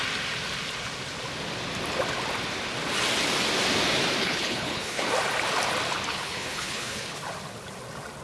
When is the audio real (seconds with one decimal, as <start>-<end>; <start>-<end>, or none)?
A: 0.0-4.2; 5.1-6.1; 7.2-8.2